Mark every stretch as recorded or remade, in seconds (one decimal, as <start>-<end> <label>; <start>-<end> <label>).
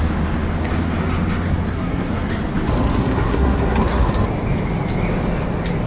0.0-1.7 recorded; 1.7-2.3 remade; 2.3-3.0 recorded; 3.0-4.1 remade; 4.1-5.9 recorded